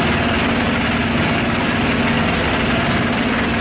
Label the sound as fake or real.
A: real